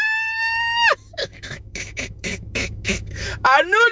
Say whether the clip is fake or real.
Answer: fake